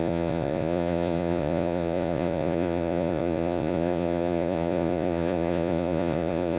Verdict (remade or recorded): remade